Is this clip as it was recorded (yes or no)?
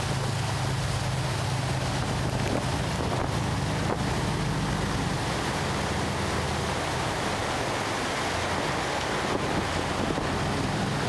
yes